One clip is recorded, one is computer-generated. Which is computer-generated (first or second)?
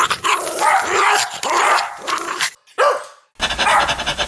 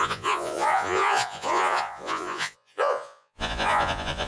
second